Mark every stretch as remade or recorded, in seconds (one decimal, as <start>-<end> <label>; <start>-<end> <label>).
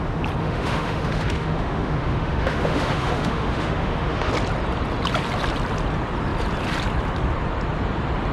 0.0-0.4 recorded; 0.4-4.3 remade; 4.3-8.3 recorded